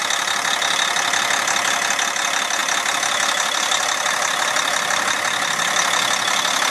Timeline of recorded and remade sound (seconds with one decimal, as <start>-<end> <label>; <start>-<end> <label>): 0.0-6.7 recorded